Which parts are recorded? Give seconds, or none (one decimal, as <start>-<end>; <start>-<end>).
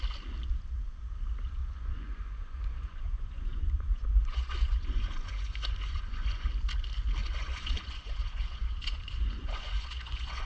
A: 0.0-1.6; 6.5-7.2